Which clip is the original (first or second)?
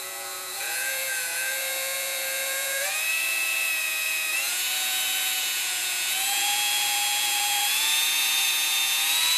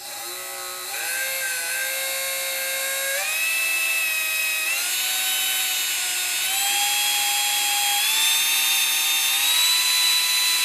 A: second